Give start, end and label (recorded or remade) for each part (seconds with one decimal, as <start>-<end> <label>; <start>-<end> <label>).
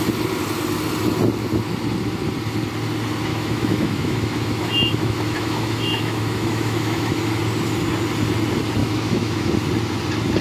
0.0-3.3 recorded; 3.3-7.4 remade; 7.4-8.8 recorded; 8.8-9.5 remade; 9.5-10.4 recorded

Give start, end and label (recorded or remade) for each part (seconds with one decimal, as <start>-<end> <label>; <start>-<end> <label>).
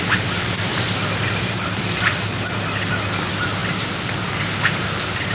0.0-0.7 recorded; 0.7-2.2 remade; 2.2-3.6 recorded; 3.6-4.2 remade; 4.2-5.3 recorded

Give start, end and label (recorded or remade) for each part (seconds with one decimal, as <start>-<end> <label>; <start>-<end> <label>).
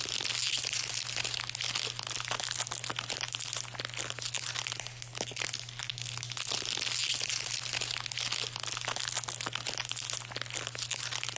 0.0-11.4 recorded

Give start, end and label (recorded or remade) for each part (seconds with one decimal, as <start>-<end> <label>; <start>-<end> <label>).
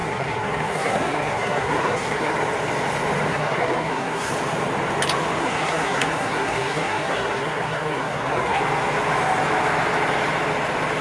0.0-2.3 remade; 2.3-3.3 recorded; 3.3-4.3 remade; 4.3-5.4 recorded; 5.4-8.6 remade; 8.6-11.0 recorded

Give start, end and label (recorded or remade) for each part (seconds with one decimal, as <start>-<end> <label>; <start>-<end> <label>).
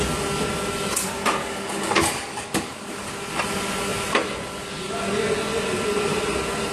0.0-1.4 recorded; 1.4-3.1 remade; 3.1-6.7 recorded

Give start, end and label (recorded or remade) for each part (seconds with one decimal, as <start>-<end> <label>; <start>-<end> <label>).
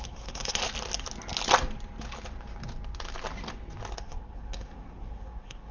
0.0-0.6 remade; 0.6-4.0 recorded; 4.0-5.7 remade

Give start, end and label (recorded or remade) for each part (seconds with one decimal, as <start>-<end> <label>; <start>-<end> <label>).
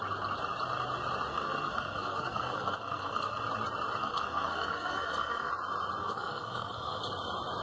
0.0-1.3 recorded; 1.3-3.4 remade; 3.4-4.0 recorded; 4.0-5.5 remade; 5.5-6.0 recorded; 6.0-7.0 remade; 7.0-7.6 recorded